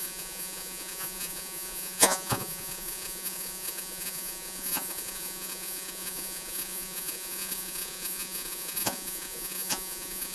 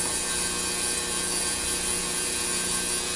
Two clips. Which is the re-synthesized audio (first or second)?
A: first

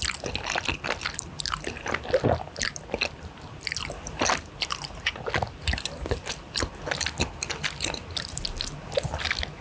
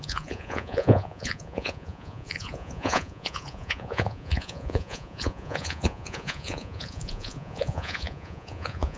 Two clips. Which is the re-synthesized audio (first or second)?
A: second